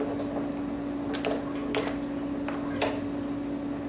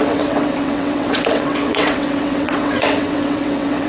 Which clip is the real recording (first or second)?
first